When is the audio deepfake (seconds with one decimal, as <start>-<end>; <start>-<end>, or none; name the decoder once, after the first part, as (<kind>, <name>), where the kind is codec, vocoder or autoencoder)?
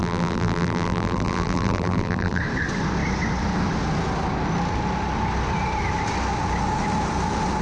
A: 0.0-2.4 (vocoder, BigVGAN v2)